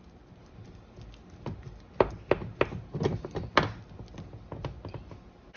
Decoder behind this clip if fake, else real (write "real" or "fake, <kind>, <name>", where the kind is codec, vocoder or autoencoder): real